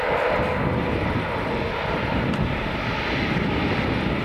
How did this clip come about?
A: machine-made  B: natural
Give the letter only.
B